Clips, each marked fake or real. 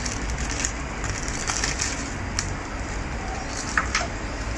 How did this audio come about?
real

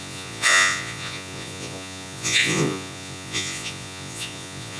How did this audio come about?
fake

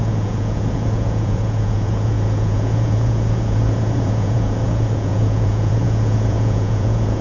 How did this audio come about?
fake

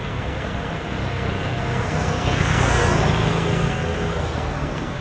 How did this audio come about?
fake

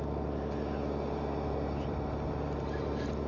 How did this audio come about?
real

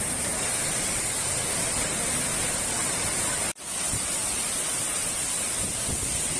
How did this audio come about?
real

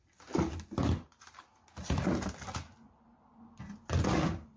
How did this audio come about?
real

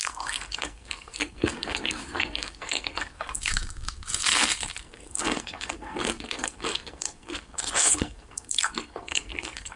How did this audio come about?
fake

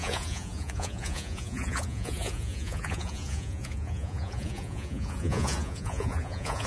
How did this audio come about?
fake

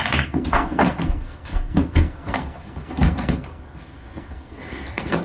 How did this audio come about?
fake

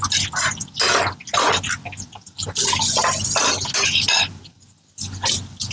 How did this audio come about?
real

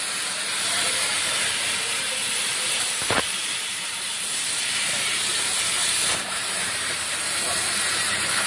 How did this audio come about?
fake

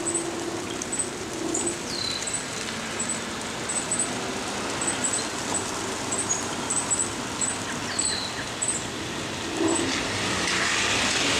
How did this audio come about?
real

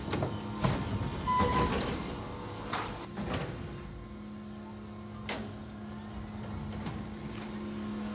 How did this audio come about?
real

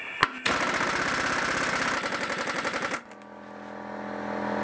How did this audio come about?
real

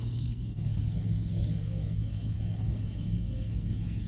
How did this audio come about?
fake